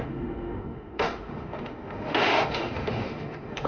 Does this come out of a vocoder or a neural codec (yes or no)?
yes